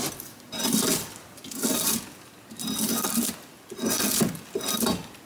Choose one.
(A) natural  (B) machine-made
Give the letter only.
A